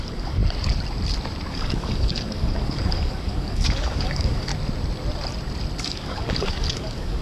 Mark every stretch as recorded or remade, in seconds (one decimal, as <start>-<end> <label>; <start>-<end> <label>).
0.0-0.4 remade; 0.4-1.5 recorded; 1.5-4.5 remade; 4.5-5.8 recorded; 5.8-7.2 remade